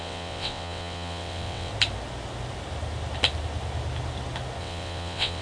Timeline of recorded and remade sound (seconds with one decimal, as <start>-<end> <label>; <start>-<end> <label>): 0.0-1.7 remade; 1.7-4.6 recorded; 4.6-5.4 remade